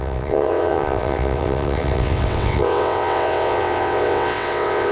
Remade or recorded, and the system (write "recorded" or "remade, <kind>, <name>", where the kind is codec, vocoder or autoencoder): remade, vocoder, WaveNeXt